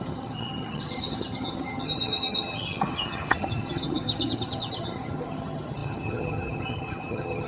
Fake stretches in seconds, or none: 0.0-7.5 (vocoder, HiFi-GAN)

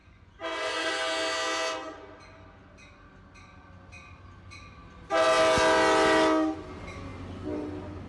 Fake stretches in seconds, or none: 0.0-0.9 (vocoder, Vocos)

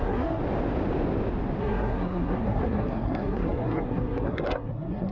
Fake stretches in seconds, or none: 0.0-0.4 (codec, SNAC); 1.6-5.1

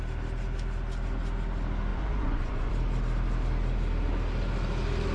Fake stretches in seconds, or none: 1.9-2.7 (vocoder, Vocos)

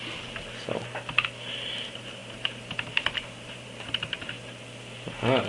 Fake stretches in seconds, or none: 2.2-4.3 (vocoder, BigVGAN v2)